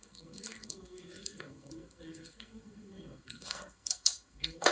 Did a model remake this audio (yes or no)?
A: yes